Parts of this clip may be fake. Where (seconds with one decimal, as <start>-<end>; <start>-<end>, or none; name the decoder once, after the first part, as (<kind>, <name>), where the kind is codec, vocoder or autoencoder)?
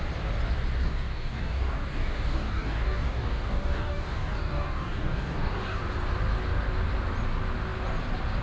0.8-5.8 (codec, DAC)